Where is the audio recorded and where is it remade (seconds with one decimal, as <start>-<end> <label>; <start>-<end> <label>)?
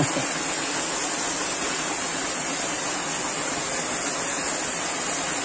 0.0-5.4 recorded